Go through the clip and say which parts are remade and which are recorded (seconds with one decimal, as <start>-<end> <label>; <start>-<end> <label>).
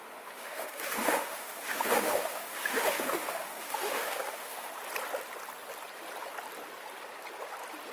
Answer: 0.0-4.7 remade; 4.7-7.9 recorded